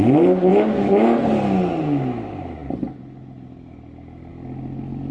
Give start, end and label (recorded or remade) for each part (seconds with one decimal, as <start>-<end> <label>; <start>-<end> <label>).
0.0-5.1 recorded